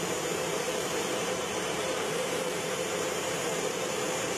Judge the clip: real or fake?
fake